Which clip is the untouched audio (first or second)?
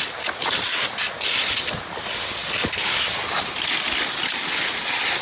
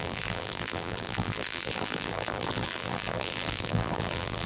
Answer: first